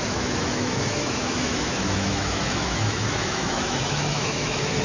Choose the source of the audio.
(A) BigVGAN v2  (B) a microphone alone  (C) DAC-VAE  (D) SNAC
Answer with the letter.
C